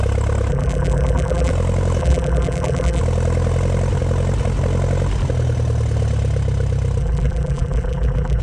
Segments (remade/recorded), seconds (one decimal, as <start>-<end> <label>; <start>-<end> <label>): 0.0-0.5 recorded; 0.5-1.5 remade; 1.5-2.0 recorded; 2.0-3.0 remade; 3.0-7.0 recorded; 7.0-8.4 remade